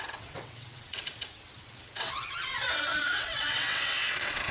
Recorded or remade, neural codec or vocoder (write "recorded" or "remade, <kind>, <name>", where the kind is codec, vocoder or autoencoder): remade, vocoder, WaveNeXt